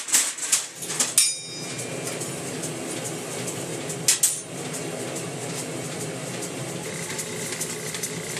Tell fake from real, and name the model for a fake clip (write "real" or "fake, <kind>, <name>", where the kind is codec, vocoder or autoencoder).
real